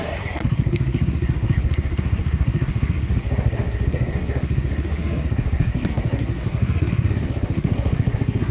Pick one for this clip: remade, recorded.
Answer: remade